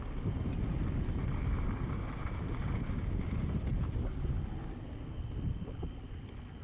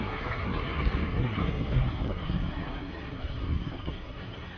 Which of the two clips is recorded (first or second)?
first